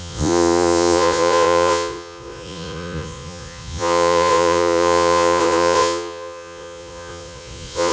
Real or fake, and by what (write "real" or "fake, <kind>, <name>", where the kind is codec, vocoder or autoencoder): fake, vocoder, Vocos